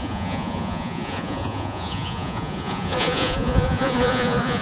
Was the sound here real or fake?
fake